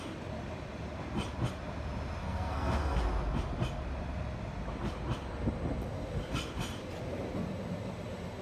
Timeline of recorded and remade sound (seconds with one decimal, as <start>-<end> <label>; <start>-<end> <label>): 0.0-2.2 recorded; 2.2-3.0 remade; 3.0-8.4 recorded